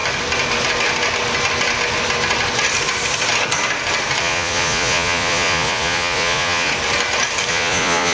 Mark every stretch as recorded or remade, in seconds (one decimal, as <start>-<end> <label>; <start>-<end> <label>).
0.0-4.2 recorded; 4.2-6.7 remade; 6.7-7.5 recorded; 7.5-8.1 remade